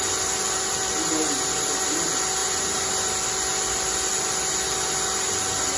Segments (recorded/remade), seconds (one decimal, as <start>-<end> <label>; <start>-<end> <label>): 0.0-2.4 recorded; 2.4-2.9 remade; 2.9-5.8 recorded